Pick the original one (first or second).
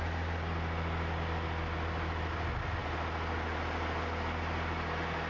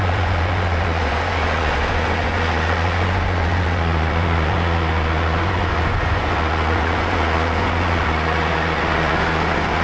first